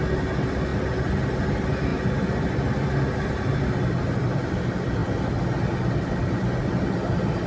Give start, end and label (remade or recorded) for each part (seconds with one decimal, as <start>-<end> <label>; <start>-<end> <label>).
0.0-7.5 recorded